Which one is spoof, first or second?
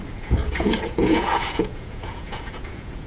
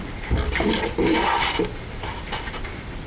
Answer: first